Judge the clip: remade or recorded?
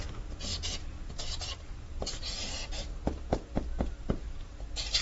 recorded